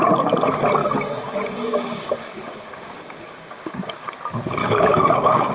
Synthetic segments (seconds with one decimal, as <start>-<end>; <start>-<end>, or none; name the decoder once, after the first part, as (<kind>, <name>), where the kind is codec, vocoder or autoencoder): 0.8-4.1 (codec, DAC); 4.6-5.5